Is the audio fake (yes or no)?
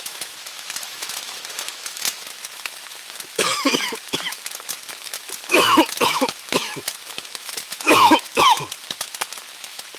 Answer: yes